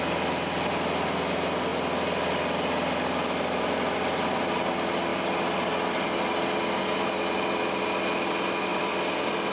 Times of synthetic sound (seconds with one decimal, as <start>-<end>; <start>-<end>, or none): 8.7-9.5